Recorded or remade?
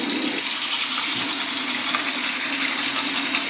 recorded